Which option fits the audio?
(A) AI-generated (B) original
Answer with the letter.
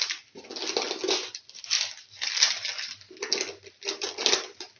B